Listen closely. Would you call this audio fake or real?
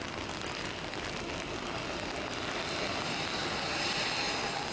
real